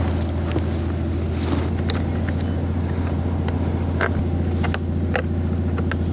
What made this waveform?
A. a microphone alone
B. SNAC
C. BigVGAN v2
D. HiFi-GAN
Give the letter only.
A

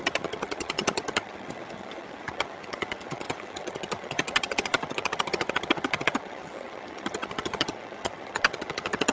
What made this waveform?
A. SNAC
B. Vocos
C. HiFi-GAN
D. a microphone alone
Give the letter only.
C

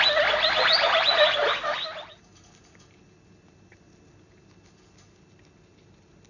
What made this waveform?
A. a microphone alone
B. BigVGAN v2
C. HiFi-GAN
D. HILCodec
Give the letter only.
A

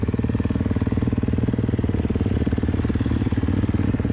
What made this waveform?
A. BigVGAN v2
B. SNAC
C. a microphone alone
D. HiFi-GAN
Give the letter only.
C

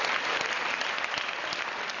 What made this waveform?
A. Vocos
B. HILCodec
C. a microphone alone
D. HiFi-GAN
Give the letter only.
C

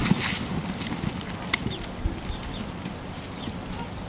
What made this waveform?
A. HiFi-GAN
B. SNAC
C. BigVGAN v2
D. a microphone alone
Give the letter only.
D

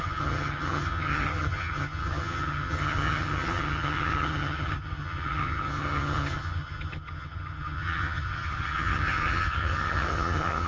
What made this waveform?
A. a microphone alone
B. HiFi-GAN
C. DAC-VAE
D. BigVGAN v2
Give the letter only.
B